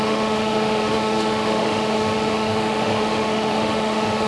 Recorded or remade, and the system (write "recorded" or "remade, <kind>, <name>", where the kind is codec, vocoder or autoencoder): remade, autoencoder, DAC-VAE